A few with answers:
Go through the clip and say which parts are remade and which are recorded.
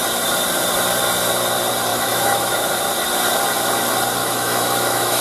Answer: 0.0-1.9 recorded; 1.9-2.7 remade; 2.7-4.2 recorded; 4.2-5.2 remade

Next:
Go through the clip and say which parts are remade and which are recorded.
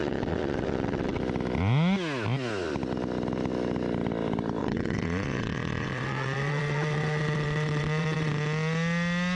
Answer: 0.0-1.2 remade; 1.2-4.6 recorded; 4.6-8.3 remade; 8.3-9.3 recorded